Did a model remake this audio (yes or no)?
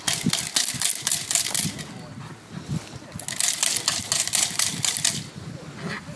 no